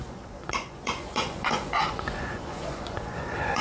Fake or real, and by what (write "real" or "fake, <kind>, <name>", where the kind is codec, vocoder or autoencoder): fake, vocoder, Vocos